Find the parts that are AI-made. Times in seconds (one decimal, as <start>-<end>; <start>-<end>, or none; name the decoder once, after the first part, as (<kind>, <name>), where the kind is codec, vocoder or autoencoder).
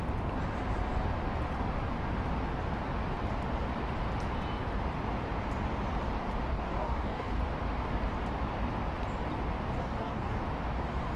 6.5-7.4 (codec, DAC); 9.8-10.4